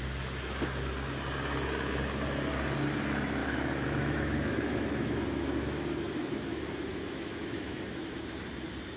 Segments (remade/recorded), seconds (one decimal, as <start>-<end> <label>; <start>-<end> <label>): 0.0-3.4 recorded; 3.4-8.2 remade; 8.2-9.0 recorded